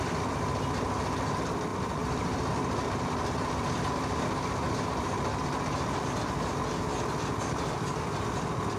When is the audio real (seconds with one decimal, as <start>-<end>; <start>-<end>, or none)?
0.0-1.7; 2.5-8.8